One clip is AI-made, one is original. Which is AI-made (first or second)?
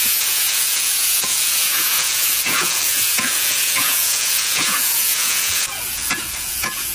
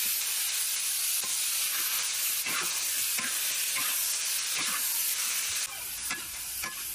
first